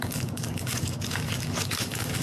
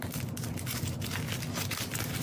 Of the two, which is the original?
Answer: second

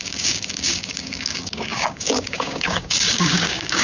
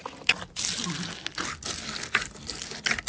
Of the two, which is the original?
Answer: second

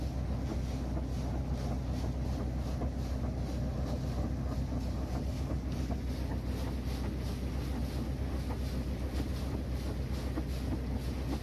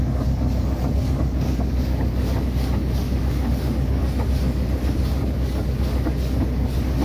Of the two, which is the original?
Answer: first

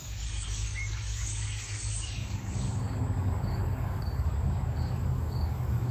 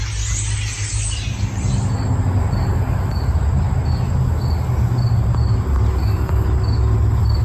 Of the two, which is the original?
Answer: second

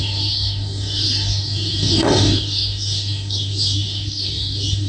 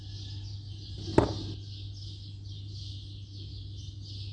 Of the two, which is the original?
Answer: second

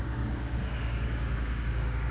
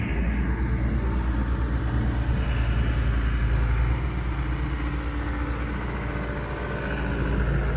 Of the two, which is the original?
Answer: second